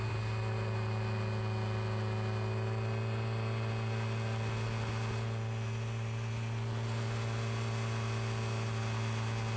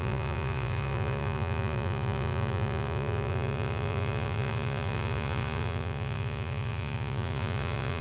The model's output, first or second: second